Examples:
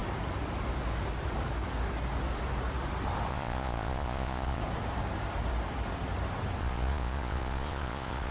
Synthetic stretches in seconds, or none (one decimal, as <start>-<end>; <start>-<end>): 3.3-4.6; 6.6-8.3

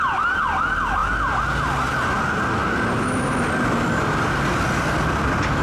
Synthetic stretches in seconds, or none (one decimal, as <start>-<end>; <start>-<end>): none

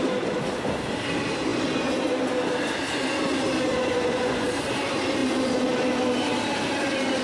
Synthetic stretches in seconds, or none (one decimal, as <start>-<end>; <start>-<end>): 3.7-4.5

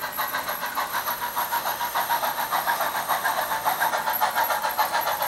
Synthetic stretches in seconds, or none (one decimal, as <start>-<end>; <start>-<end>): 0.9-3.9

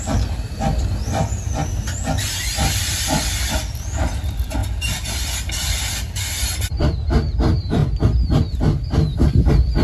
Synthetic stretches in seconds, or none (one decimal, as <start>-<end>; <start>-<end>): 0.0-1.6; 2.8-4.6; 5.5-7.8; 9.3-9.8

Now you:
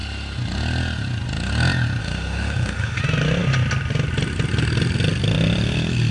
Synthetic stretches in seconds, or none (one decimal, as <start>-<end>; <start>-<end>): 2.0-3.0

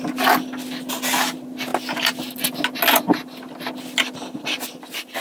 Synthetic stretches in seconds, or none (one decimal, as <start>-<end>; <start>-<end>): none

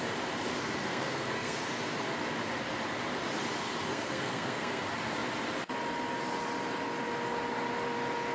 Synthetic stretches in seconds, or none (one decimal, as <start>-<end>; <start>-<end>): 0.8-1.6; 3.9-4.8